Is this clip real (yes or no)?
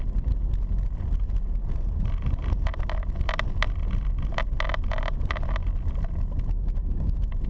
yes